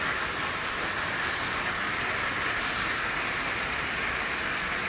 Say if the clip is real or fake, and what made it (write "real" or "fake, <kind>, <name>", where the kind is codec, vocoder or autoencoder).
real